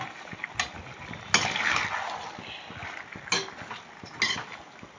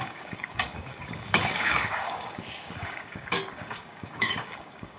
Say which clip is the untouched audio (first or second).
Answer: first